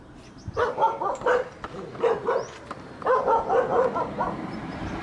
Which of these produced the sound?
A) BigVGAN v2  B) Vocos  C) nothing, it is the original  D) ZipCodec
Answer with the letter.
A